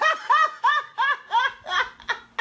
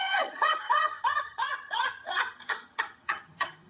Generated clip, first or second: second